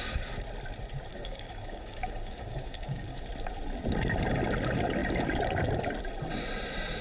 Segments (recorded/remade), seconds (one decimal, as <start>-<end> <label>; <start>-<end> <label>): 0.0-1.1 recorded; 1.1-3.3 remade; 3.3-7.0 recorded